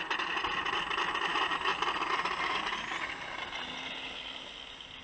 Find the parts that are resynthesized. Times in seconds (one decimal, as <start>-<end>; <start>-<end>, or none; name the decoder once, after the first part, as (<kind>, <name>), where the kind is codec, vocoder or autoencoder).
none